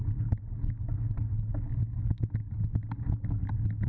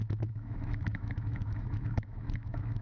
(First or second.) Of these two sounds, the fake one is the second